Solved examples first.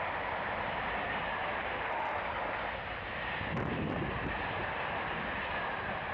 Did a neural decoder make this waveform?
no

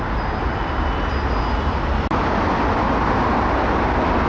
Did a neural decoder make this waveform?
no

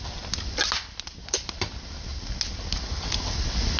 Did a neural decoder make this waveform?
no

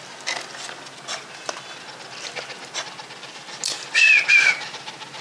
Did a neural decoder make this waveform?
no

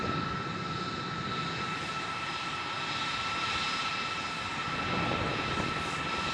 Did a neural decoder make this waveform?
no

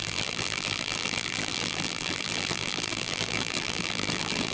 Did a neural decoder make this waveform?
yes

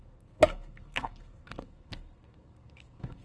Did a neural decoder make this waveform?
yes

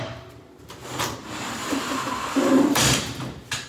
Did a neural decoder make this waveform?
yes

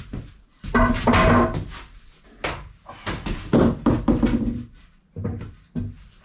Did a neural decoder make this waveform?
no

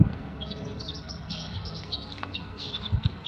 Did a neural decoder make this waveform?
yes